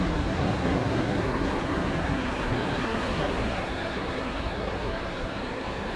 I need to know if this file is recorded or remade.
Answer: remade